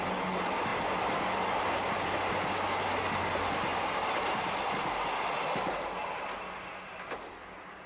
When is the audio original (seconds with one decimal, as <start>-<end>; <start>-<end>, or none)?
0.0-7.9